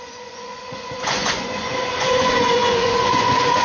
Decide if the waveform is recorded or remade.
remade